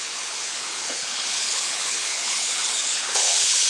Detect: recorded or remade remade